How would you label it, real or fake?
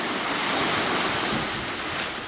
real